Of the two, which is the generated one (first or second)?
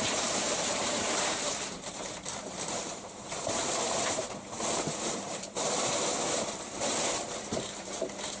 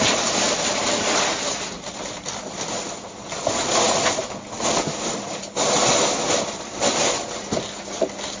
first